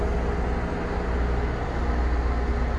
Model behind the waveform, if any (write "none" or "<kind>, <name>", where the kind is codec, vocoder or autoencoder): none